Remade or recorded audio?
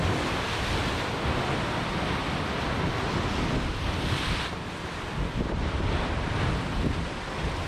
recorded